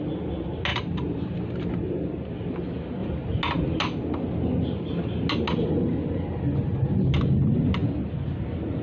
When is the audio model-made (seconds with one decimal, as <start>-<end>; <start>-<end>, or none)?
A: 0.7-2.3